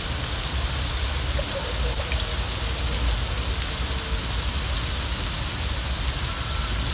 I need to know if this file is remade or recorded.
recorded